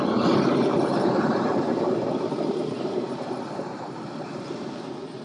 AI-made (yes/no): yes